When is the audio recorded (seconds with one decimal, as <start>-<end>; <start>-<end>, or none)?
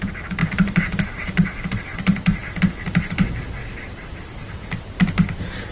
1.9-2.6; 3.6-5.7